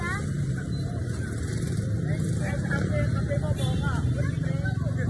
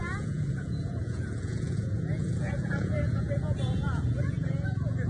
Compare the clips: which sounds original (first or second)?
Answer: first